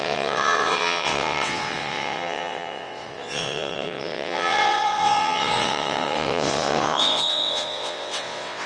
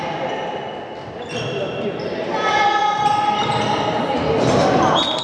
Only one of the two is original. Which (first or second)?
second